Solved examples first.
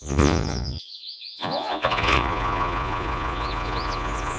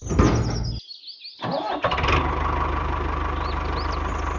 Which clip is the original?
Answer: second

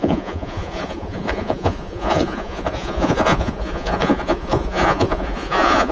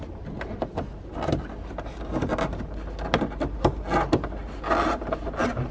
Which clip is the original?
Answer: second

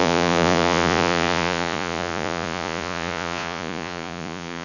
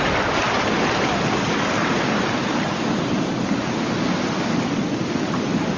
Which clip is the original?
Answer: second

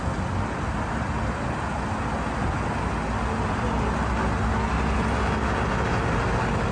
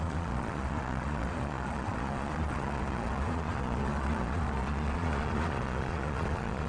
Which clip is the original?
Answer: first